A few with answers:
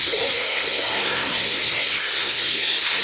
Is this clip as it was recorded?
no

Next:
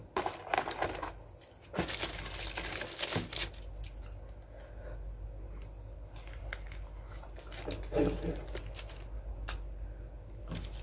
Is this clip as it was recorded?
yes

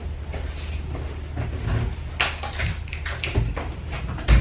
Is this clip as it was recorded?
yes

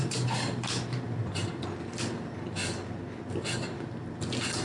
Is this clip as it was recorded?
no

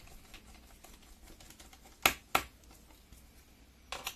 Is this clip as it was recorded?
yes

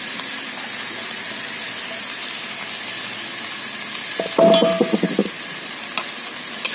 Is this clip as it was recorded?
yes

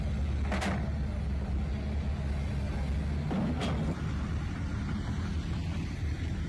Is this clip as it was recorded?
yes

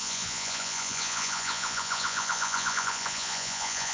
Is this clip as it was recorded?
no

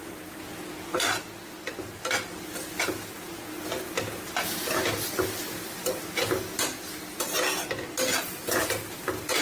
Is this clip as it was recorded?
yes